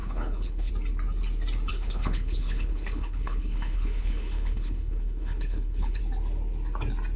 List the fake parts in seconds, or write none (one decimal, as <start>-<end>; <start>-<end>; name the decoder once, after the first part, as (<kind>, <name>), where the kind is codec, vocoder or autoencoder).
0.0-0.7 (codec, HILCodec); 1.7-6.0